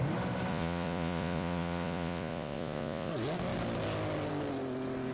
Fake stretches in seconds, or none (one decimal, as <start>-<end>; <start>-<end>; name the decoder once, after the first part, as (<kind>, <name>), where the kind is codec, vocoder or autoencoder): 0.5-3.1 (vocoder, Vocos)